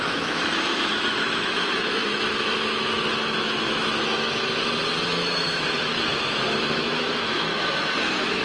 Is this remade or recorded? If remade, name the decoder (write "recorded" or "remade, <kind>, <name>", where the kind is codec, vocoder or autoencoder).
remade, autoencoder, DAC-VAE